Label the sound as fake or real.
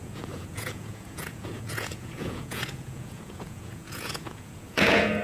fake